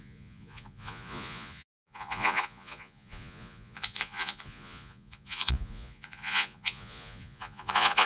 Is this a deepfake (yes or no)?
yes